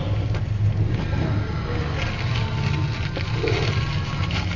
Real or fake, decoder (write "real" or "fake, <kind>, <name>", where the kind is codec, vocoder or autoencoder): real